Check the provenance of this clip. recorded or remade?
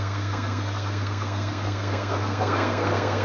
remade